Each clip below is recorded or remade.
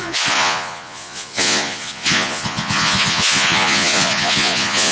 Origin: remade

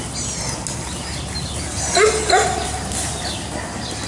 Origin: recorded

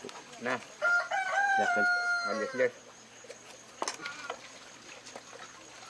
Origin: recorded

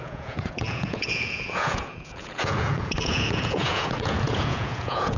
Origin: remade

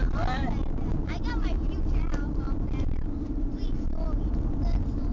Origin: recorded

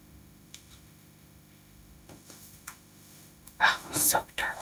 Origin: remade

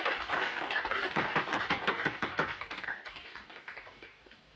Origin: remade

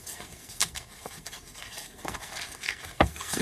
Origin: remade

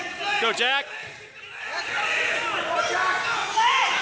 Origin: recorded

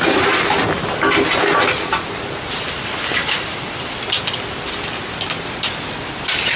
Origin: recorded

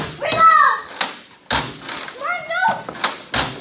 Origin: recorded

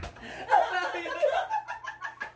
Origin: recorded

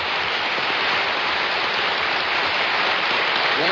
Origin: remade